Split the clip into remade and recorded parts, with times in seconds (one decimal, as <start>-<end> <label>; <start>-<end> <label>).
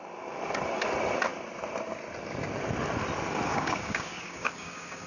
0.0-3.5 recorded; 3.5-5.1 remade